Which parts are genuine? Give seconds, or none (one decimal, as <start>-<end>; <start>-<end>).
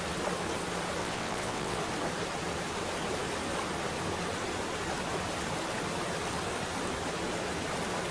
0.0-1.0; 1.8-8.1